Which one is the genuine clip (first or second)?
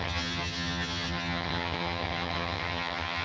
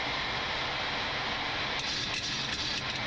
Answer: second